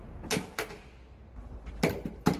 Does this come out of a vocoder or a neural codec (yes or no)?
no